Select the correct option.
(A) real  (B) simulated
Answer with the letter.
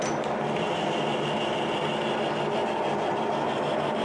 A